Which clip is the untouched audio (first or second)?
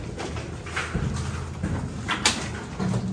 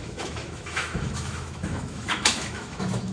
first